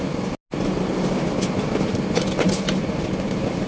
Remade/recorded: recorded